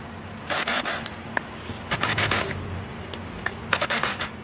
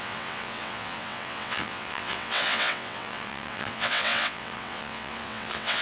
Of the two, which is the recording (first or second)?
first